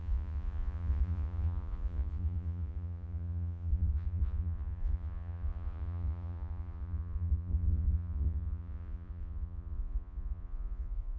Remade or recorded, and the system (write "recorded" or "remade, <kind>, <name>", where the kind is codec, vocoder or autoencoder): remade, vocoder, Vocos